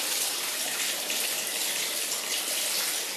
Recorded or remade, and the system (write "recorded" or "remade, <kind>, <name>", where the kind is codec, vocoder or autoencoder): recorded